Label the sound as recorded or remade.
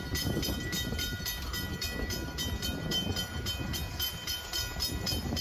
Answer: recorded